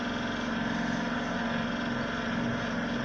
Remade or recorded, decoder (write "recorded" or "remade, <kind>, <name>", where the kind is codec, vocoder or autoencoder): recorded